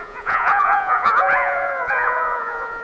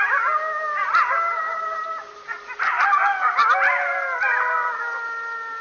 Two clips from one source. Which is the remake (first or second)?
first